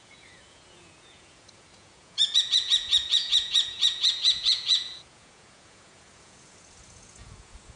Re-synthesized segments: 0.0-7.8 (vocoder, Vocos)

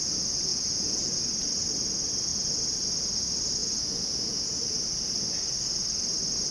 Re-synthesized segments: 0.5-1.2 (vocoder, Vocos); 3.6-4.5

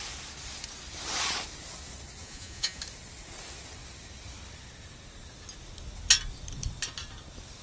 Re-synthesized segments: 2.2-2.8 (vocoder, Vocos)

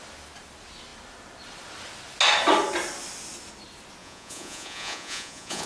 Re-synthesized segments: 4.0-5.7 (vocoder, Vocos)

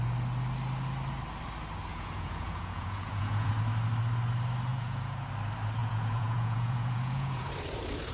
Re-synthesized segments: 1.9-3.5 (vocoder, Vocos); 4.7-5.3; 5.8-7.5

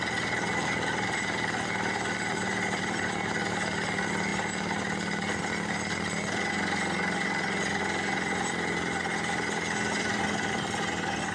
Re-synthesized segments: none

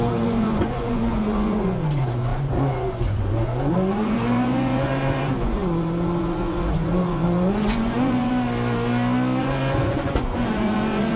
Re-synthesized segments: 0.0-8.3 (vocoder, Vocos); 9.4-11.2